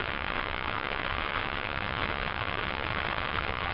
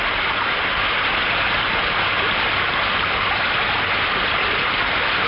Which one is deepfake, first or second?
first